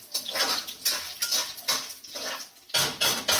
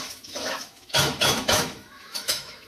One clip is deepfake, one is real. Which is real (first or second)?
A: first